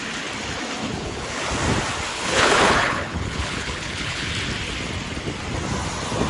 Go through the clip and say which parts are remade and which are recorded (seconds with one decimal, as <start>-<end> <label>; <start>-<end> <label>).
0.0-0.8 recorded; 0.8-1.5 remade; 1.5-2.1 recorded; 2.1-4.3 remade; 4.3-6.3 recorded